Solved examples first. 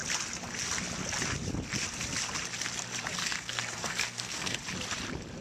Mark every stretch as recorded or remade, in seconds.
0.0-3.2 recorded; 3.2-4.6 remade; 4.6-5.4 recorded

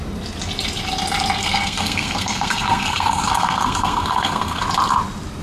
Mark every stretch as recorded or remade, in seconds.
0.0-1.4 recorded; 1.4-4.6 remade; 4.6-5.4 recorded

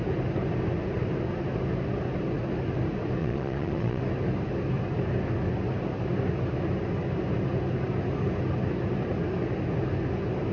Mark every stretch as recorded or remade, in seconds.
0.0-3.2 recorded; 3.2-4.0 remade; 4.0-10.5 recorded

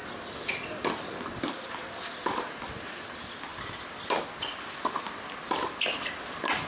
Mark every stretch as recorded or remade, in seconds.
0.0-6.7 recorded